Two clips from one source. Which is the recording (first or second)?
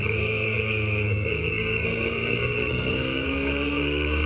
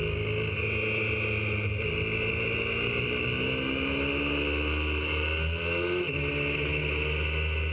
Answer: second